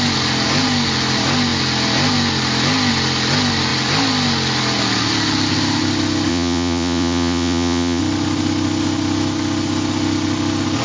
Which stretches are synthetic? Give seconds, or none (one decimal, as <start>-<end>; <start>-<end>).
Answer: 6.3-8.0